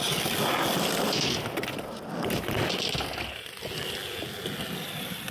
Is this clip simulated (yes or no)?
no